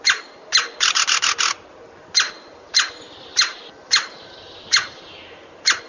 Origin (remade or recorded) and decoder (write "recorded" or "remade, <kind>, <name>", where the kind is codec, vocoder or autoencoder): recorded